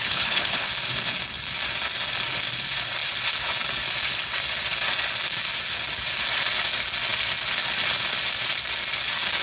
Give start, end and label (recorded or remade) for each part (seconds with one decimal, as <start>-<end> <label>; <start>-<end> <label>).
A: 0.0-0.7 remade; 0.7-9.4 recorded